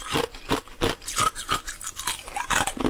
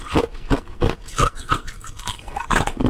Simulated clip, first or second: second